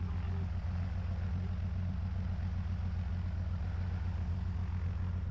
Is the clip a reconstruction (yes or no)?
no